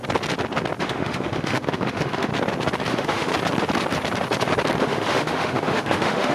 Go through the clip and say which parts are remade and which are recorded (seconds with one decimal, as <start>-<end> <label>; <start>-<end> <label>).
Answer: 0.0-0.8 recorded; 0.8-2.3 remade; 2.3-2.9 recorded; 2.9-3.3 remade; 3.3-4.8 recorded; 4.8-6.3 remade

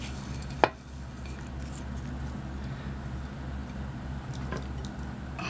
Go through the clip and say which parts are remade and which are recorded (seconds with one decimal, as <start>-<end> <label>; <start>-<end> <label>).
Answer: 0.0-5.5 recorded

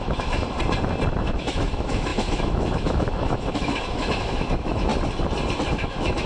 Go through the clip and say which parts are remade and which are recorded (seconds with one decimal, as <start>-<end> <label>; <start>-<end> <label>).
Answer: 0.0-0.4 remade; 0.4-1.2 recorded; 1.2-4.9 remade; 4.9-5.7 recorded; 5.7-6.3 remade

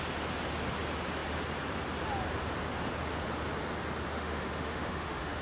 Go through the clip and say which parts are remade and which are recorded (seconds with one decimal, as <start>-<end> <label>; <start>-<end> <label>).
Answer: 0.0-4.1 recorded; 4.1-5.4 remade